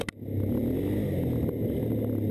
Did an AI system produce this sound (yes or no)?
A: no